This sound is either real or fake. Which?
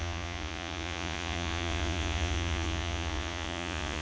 fake